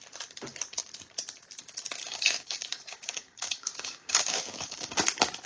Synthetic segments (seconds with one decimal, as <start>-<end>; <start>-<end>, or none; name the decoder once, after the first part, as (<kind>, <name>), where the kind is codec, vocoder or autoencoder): 2.0-5.0 (codec, DAC)